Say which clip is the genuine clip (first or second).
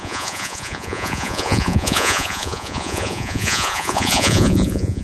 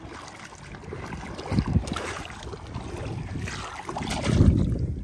second